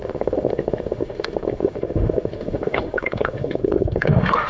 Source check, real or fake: fake